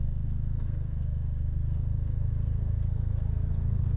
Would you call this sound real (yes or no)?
no